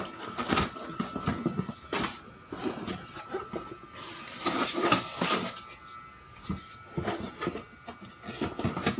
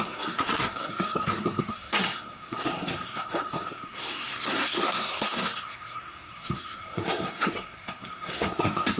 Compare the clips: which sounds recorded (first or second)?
first